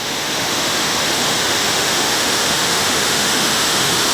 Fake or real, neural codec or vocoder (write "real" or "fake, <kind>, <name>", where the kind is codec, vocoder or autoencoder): fake, autoencoder, DAC-VAE